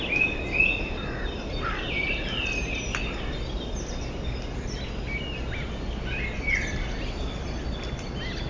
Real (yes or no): yes